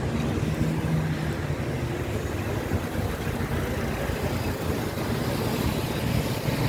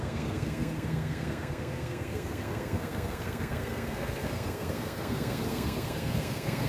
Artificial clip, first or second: second